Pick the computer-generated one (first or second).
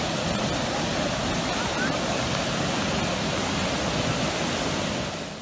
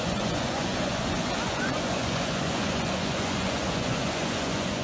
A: second